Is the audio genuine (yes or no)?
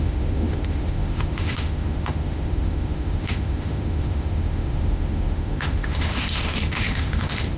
no